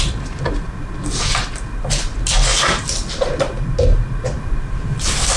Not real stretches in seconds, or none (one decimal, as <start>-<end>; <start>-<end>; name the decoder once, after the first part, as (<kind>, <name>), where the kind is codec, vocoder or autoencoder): none

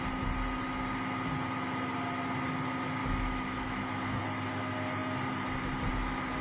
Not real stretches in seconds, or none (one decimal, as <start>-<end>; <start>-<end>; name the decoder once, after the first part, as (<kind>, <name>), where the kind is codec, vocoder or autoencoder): 3.0-4.2 (autoencoder, DAC-VAE)